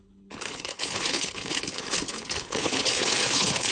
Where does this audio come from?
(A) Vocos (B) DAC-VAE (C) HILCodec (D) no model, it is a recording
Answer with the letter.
C